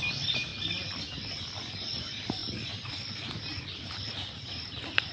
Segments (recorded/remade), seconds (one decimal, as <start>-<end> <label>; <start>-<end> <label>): 0.0-0.5 remade; 0.5-2.0 recorded; 2.0-2.4 remade; 2.4-3.4 recorded; 3.4-5.1 remade